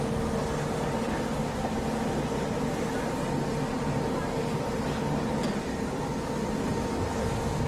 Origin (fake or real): real